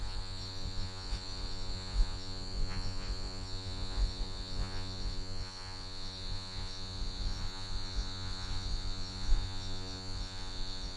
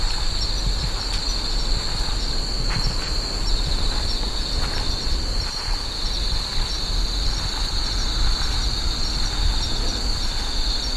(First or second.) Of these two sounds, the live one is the second